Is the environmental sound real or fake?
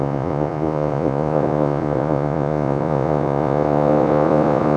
fake